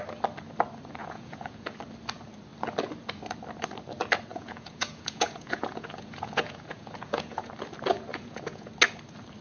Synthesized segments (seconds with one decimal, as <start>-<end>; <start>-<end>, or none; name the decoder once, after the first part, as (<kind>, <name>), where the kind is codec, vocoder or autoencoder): 1.0-1.8 (vocoder, Vocos); 4.3-7.5; 8.1-8.7